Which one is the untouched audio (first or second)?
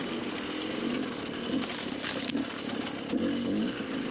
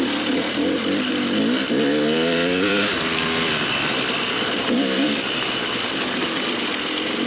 first